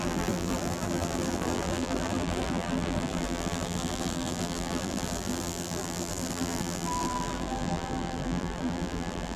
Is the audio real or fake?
fake